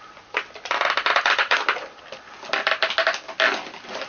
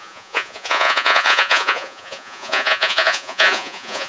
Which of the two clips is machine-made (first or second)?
second